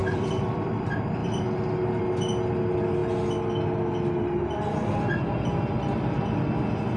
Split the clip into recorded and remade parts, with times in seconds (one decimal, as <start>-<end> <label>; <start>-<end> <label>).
0.0-0.7 remade; 0.7-7.0 recorded

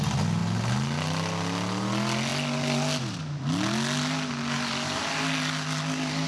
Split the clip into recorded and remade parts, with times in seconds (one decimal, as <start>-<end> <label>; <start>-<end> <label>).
0.0-6.3 recorded

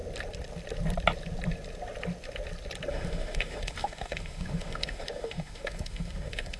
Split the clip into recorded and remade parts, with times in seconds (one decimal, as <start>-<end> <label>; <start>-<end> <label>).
0.0-2.9 recorded; 2.9-6.6 remade